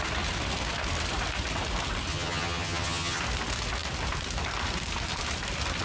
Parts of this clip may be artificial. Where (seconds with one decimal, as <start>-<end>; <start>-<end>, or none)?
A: 2.1-3.2